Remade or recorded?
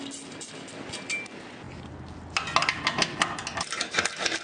recorded